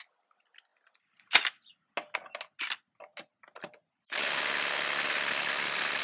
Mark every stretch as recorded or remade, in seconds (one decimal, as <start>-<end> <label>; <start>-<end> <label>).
0.0-6.0 recorded